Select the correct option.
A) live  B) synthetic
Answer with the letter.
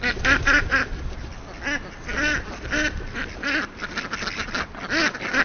A